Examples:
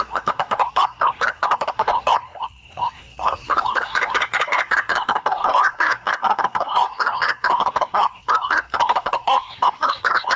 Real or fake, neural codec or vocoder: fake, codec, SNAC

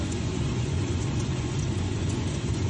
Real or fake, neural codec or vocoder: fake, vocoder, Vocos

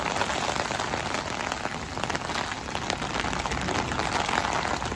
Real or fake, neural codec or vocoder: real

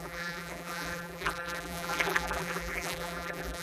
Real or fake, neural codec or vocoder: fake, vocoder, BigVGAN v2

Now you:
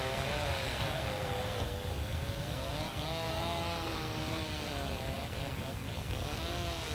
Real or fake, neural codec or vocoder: fake, codec, SNAC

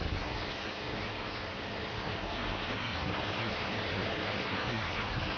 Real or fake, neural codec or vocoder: fake, codec, SNAC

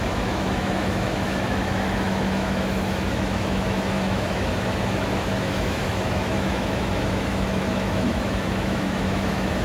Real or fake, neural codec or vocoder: fake, autoencoder, DAC-VAE